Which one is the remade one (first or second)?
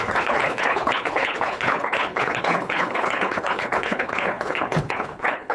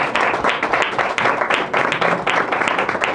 first